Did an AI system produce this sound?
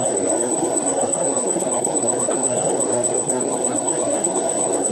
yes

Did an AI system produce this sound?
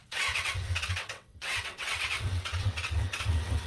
yes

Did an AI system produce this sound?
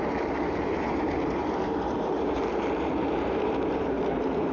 yes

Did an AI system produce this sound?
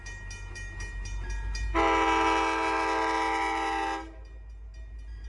no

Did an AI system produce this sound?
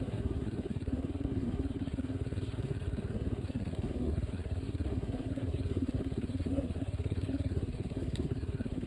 yes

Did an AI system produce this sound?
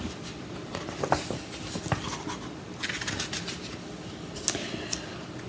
no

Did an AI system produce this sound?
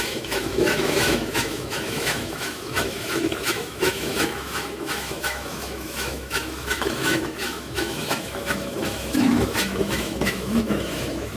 yes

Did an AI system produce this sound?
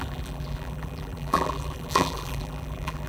yes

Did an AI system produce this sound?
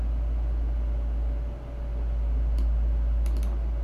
no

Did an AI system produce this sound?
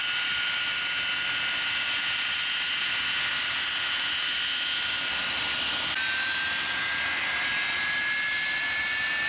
no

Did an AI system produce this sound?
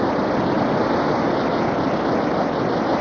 no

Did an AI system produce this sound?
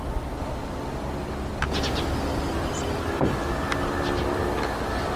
no